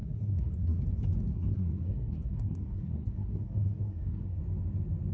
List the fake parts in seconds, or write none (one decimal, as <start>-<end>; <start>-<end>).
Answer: 0.0-0.8; 1.3-4.4